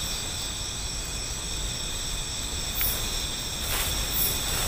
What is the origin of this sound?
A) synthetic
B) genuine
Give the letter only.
B